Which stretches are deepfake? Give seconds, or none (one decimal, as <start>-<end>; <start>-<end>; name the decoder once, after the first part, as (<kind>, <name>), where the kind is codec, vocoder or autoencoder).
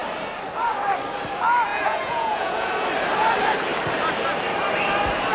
1.7-2.7 (vocoder, Vocos)